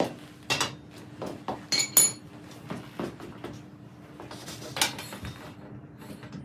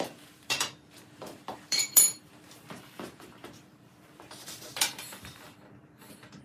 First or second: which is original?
first